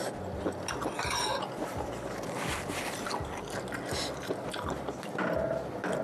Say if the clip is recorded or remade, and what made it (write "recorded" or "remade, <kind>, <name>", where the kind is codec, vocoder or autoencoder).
recorded